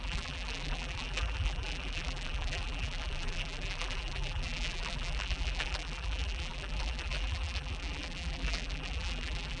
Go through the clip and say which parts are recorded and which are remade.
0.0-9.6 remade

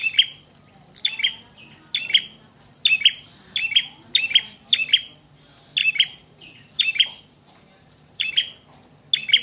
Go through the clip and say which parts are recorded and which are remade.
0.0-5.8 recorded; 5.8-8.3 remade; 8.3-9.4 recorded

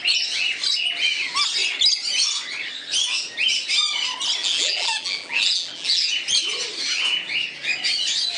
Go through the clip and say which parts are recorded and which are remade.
0.0-4.4 recorded; 4.4-6.1 remade; 6.1-8.4 recorded

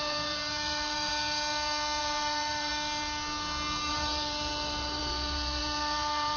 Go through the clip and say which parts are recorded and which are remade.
0.0-1.1 remade; 1.1-2.0 recorded; 2.0-2.7 remade; 2.7-3.9 recorded; 3.9-6.4 remade

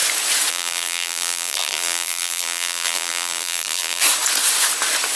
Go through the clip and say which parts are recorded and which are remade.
0.0-0.5 recorded; 0.5-4.0 remade; 4.0-5.2 recorded